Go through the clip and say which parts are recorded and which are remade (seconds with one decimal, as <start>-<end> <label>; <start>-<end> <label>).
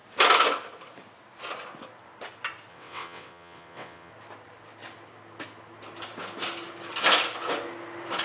0.0-2.7 recorded; 2.7-4.1 remade; 4.1-8.2 recorded